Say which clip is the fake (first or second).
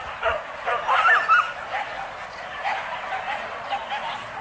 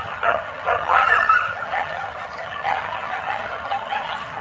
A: second